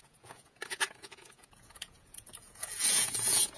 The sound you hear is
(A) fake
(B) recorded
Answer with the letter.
A